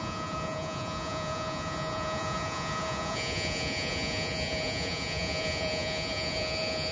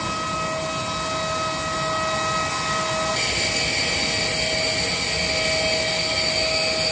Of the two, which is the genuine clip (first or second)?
second